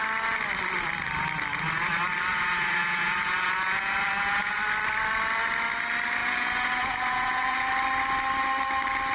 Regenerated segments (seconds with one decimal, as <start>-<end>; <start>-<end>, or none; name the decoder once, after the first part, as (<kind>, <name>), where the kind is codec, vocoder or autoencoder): 2.3-4.6 (vocoder, Vocos); 6.2-7.7